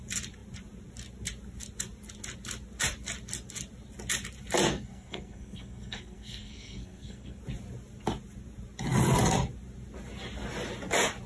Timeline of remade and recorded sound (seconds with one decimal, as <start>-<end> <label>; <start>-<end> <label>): 0.0-4.7 recorded; 4.7-7.4 remade; 7.4-11.3 recorded